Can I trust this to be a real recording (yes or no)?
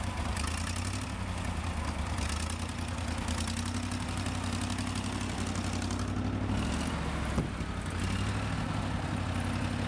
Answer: yes